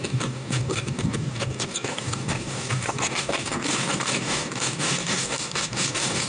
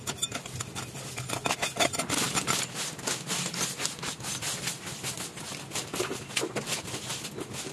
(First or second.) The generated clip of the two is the first